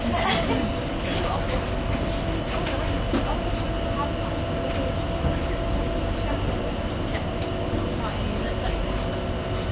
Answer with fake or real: real